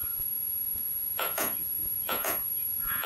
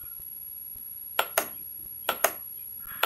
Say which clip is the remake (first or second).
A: first